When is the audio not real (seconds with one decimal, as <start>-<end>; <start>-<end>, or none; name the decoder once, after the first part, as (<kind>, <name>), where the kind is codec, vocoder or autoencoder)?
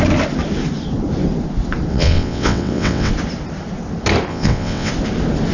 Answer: 1.9-3.1 (vocoder, WaveNeXt); 4.3-4.9